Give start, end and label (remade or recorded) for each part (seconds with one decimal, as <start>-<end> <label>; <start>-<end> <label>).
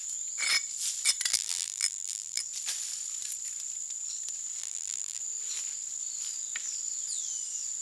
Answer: 0.0-1.3 recorded; 1.3-2.4 remade; 2.4-4.6 recorded; 4.6-5.2 remade; 5.2-7.8 recorded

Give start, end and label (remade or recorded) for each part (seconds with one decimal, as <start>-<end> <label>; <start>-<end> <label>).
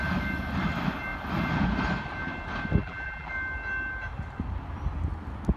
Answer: 0.0-2.8 recorded; 2.8-3.3 remade; 3.3-5.6 recorded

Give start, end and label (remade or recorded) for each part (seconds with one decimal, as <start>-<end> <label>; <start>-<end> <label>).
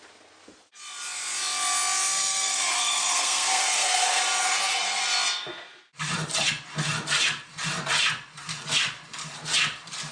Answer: 0.0-2.1 recorded; 2.1-4.2 remade; 4.2-10.1 recorded